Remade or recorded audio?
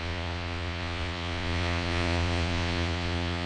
remade